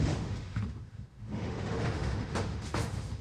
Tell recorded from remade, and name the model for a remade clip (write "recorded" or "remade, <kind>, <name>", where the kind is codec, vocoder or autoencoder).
remade, autoencoder, DAC-VAE